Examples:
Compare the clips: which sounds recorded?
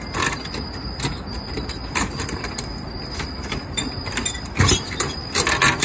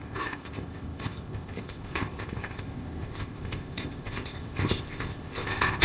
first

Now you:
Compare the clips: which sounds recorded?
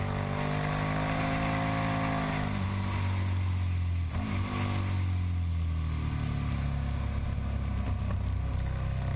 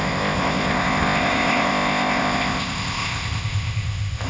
first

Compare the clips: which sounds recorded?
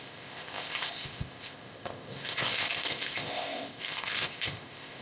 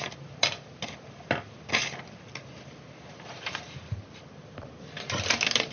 second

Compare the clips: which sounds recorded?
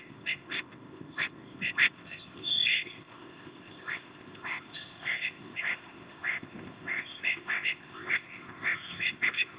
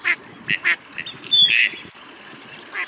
second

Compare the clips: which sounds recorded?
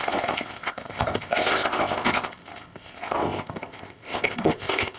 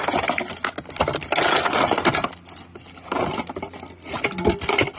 second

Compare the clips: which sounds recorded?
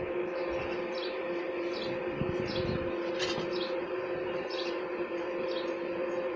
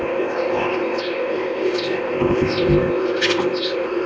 first